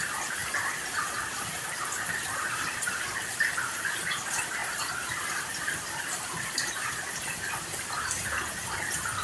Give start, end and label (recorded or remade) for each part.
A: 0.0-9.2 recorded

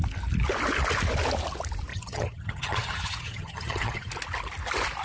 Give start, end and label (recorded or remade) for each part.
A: 0.0-1.9 recorded; 1.9-4.1 remade; 4.1-5.0 recorded

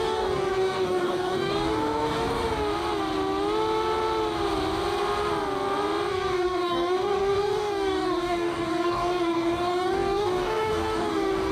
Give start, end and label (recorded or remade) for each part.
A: 0.0-2.4 remade; 2.4-6.1 recorded; 6.1-11.5 remade

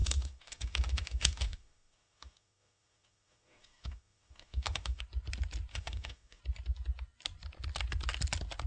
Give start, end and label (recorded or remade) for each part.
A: 0.0-5.0 remade; 5.0-5.7 recorded; 5.7-6.4 remade; 6.4-8.7 recorded

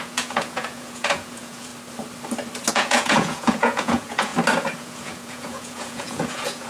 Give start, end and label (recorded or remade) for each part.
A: 0.0-1.7 remade; 1.7-2.7 recorded; 2.7-4.3 remade; 4.3-4.8 recorded; 4.8-6.7 remade

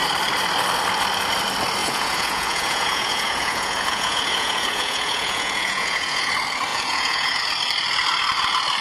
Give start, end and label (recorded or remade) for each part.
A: 0.0-1.8 recorded; 1.8-6.3 remade; 6.3-6.7 recorded; 6.7-7.4 remade; 7.4-8.8 recorded